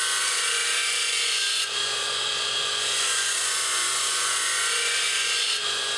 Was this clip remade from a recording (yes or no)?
yes